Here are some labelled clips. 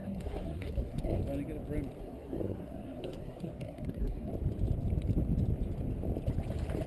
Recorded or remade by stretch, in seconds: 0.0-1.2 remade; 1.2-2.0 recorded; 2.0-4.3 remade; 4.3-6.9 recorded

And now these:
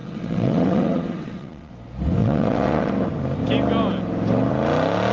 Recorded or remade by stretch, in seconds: 0.0-1.7 remade; 1.7-2.2 recorded; 2.2-2.9 remade; 2.9-5.1 recorded

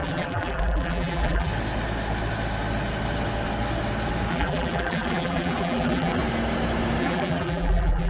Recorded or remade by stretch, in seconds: 0.0-1.5 remade; 1.5-4.3 recorded; 4.3-6.2 remade; 6.2-7.0 recorded; 7.0-8.1 remade

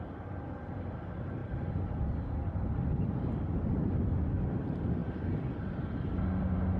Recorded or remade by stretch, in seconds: 0.0-6.8 recorded